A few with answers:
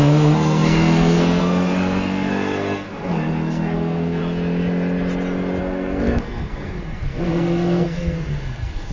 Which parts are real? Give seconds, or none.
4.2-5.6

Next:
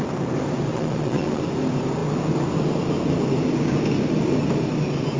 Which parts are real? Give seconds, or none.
0.0-0.7; 1.4-5.2

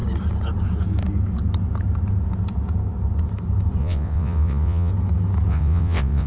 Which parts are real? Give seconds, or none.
0.0-3.8; 4.9-5.5